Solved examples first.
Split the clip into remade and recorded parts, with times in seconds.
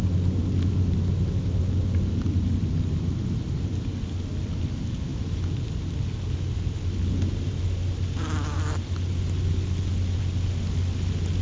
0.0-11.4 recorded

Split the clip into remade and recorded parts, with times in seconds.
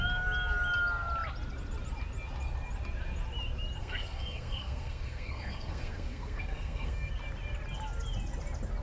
0.0-3.8 recorded; 3.8-7.1 remade; 7.1-8.8 recorded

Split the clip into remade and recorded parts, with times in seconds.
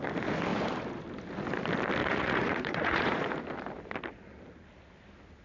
0.0-2.0 recorded; 2.0-3.4 remade; 3.4-5.4 recorded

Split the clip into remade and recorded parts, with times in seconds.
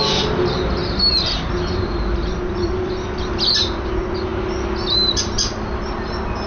0.0-6.5 recorded